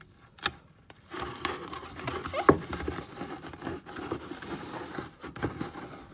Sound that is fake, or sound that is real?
real